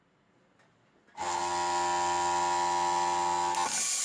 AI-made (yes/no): no